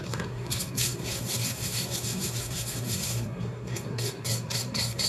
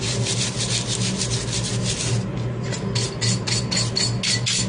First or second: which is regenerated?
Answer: first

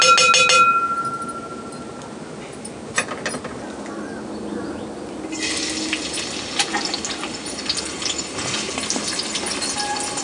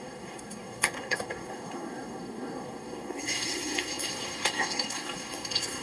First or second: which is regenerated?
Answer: second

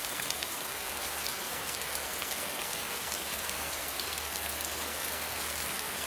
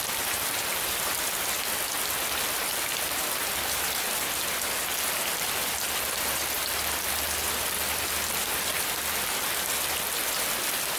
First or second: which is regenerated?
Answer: first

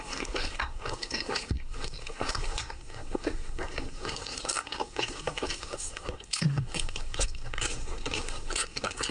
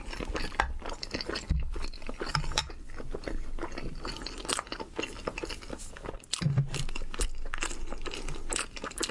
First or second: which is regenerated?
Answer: first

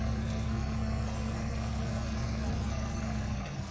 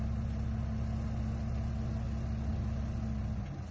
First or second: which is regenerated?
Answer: first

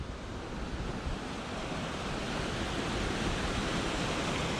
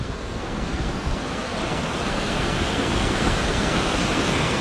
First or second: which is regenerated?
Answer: second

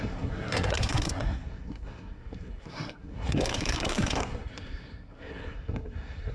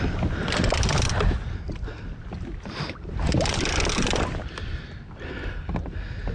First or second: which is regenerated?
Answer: first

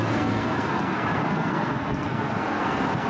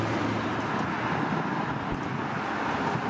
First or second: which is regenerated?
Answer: first